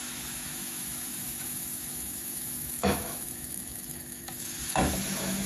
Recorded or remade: remade